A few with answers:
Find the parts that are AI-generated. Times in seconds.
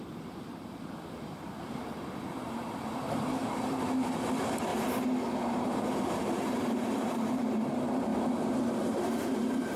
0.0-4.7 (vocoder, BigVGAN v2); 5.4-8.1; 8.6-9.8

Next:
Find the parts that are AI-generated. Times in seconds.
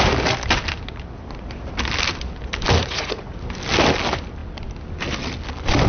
2.8-3.4 (vocoder, Vocos)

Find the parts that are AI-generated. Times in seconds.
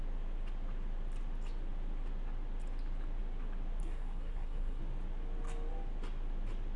3.8-4.8 (codec, SNAC)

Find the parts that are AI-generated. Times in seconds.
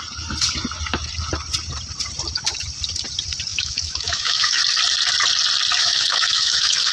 3.5-4.6 (autoencoder, DAC-VAE); 5.8-6.9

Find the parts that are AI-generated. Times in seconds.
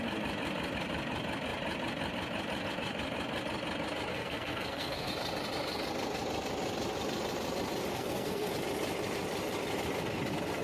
4.1-5.1 (codec, SNAC); 7.9-8.5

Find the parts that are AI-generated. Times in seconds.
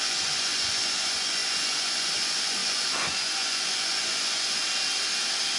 0.0-4.6 (vocoder, Vocos)